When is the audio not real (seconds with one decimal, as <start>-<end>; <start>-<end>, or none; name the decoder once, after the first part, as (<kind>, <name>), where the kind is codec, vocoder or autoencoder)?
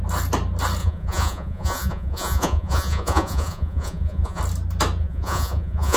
0.8-4.4 (vocoder, Vocos); 5.0-6.0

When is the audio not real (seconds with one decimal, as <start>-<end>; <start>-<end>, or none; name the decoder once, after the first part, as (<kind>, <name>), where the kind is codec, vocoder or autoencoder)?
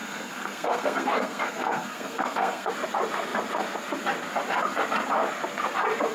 0.0-2.7 (codec, SNAC)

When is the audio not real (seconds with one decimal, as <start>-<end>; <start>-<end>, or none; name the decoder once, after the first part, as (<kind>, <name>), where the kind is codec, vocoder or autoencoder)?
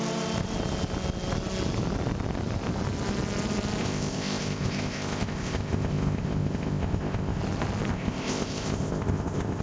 3.8-7.4 (codec, ZipCodec); 7.9-9.6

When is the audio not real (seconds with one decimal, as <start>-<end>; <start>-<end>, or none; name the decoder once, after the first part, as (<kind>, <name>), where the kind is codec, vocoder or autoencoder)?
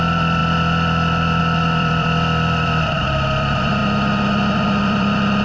0.0-3.8 (vocoder, BigVGAN v2); 4.8-5.4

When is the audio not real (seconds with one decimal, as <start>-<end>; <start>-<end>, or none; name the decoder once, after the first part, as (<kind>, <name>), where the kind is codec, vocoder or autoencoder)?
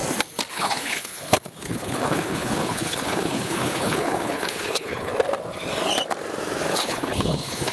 0.5-5.1 (codec, HILCodec); 6.7-7.7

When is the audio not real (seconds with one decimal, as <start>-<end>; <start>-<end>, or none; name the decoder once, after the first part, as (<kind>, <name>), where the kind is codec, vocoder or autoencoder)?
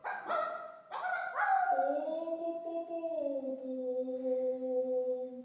none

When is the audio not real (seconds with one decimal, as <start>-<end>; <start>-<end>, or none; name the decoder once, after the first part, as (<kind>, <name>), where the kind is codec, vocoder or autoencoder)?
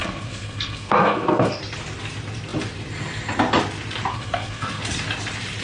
0.0-1.6 (codec, SNAC); 4.1-4.8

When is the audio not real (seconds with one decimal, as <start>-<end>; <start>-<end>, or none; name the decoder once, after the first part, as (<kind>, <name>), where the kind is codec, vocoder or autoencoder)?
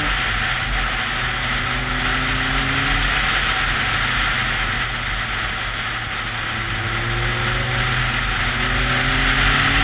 none